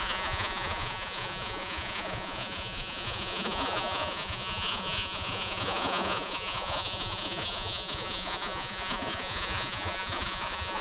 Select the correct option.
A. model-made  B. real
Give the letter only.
A